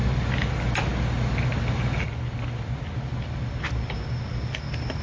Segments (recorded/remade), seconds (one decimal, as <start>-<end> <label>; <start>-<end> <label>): 0.0-5.0 recorded